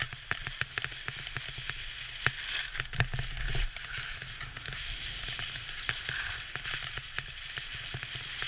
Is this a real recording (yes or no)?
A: yes